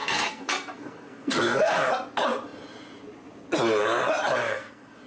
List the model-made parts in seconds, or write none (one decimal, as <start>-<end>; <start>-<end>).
0.0-1.9; 4.4-5.1